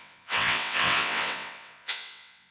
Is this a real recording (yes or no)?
no